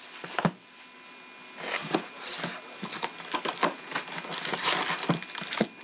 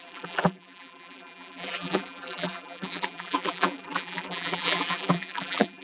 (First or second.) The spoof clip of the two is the second